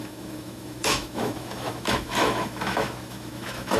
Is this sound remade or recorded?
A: remade